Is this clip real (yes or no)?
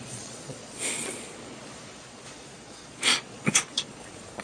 no